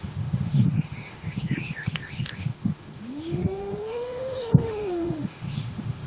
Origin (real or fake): fake